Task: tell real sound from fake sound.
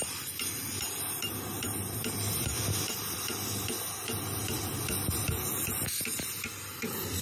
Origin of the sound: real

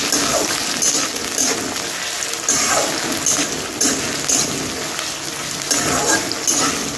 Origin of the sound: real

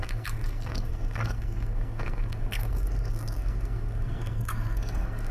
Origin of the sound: fake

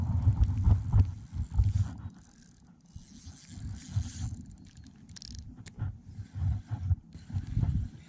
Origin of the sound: real